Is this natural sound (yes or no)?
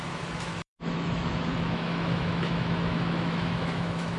no